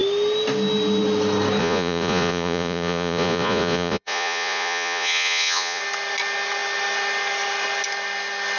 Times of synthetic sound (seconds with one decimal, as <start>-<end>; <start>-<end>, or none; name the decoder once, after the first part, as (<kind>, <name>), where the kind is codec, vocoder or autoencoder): 1.6-5.8 (vocoder, Vocos)